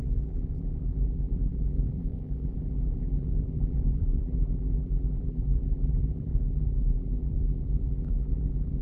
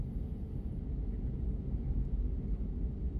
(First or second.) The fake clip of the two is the first